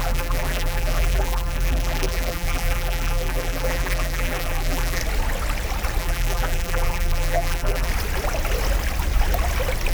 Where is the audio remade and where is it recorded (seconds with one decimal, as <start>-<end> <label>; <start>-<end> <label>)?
0.0-5.0 remade; 5.0-6.0 recorded; 6.0-7.9 remade; 7.9-9.9 recorded